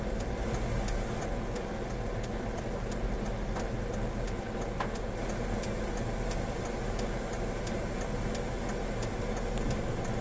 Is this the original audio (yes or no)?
yes